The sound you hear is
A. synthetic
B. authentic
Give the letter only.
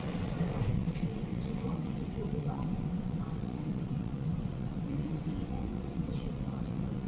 A